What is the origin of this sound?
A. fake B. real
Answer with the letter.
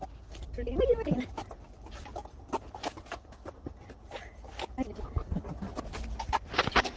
B